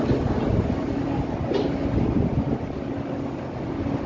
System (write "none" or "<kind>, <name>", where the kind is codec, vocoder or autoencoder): none